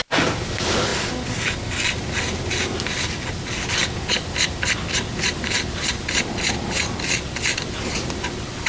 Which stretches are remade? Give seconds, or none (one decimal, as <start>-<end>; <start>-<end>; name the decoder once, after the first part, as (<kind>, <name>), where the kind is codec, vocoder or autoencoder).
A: none